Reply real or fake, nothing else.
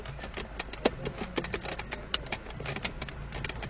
real